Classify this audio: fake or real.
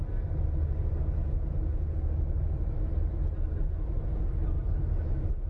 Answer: real